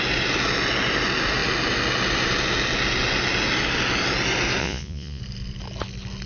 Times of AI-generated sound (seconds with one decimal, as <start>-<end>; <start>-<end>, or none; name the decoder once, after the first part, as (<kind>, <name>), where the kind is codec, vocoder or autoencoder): 4.6-5.2 (vocoder, Vocos)